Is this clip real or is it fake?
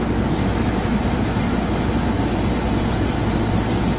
real